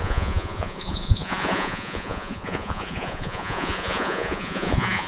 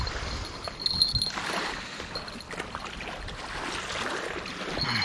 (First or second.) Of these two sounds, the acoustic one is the second